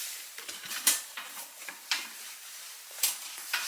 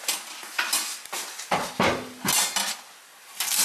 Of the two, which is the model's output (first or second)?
first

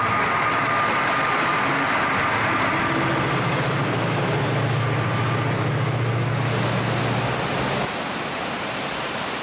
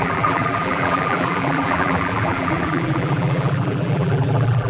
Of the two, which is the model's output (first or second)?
second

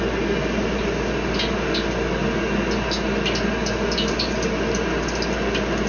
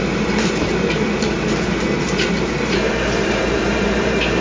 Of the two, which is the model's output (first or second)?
second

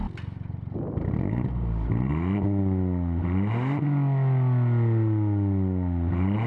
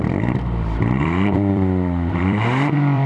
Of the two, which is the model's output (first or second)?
second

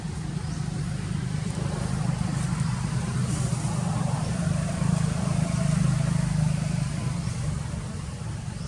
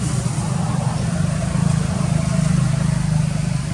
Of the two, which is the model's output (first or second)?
first